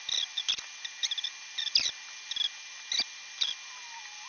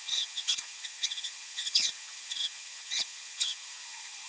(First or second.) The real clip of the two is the first